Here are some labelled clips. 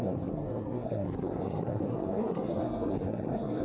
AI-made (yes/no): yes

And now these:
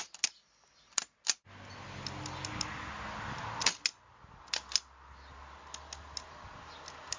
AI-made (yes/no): no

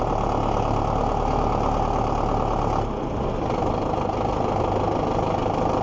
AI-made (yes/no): no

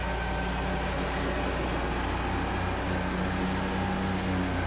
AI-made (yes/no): no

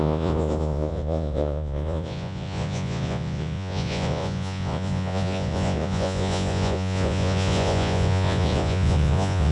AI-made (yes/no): yes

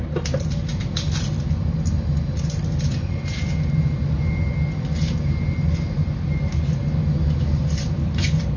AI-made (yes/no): no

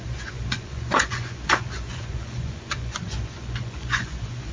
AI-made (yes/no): yes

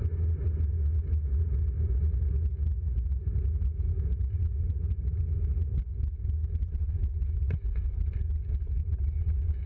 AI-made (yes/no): no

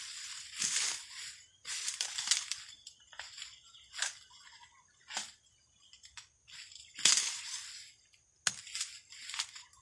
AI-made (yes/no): no